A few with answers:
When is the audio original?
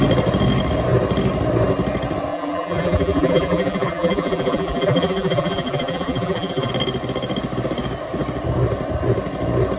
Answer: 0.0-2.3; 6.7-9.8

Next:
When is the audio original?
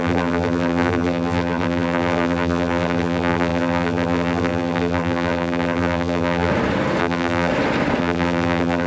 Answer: 6.5-7.0; 7.5-8.0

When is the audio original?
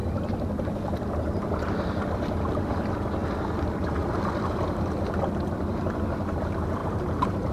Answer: 0.0-6.8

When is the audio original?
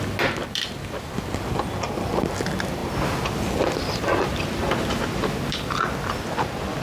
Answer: 0.0-0.4; 1.4-6.8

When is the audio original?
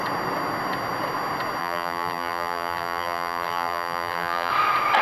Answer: 0.0-1.6; 4.5-5.0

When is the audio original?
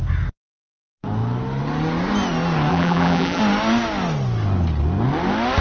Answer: 0.0-2.7; 3.4-5.6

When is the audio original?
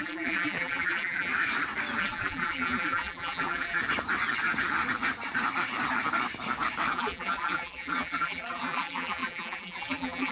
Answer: 1.3-2.0; 3.8-6.9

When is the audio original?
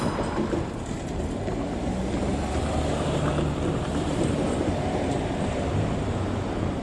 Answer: 0.0-2.2; 5.7-6.8